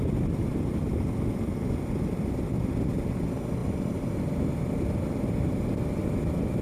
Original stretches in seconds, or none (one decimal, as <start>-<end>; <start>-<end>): 0.0-6.6